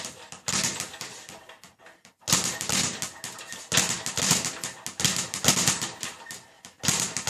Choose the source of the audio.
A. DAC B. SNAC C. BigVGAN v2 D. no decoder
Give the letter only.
D